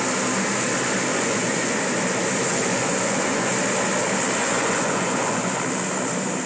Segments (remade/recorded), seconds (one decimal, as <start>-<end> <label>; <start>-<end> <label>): 0.0-1.1 recorded; 1.1-1.8 remade; 1.8-2.5 recorded; 2.5-3.5 remade; 3.5-4.4 recorded; 4.4-5.6 remade; 5.6-6.5 recorded